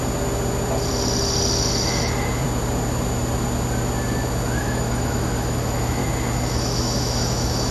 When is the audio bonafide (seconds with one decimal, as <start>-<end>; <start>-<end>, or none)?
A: 0.0-4.6; 6.0-6.5

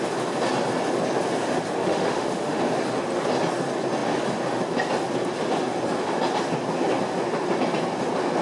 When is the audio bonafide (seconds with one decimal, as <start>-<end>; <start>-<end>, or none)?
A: 0.0-1.8; 2.6-8.4

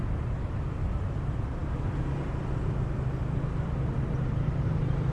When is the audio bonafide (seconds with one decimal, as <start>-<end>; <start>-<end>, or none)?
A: 0.0-5.1

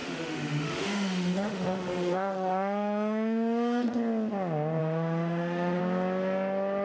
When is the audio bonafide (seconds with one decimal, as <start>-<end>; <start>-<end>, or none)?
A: 3.9-4.8; 5.8-6.8